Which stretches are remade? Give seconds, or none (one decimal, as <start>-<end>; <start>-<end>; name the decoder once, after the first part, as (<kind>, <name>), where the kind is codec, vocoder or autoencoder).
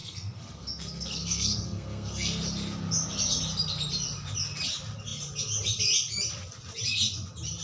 0.0-2.4 (codec, SNAC)